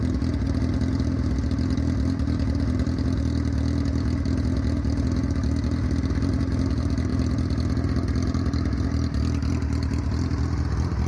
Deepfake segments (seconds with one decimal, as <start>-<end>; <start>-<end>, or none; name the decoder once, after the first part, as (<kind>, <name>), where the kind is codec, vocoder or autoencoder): none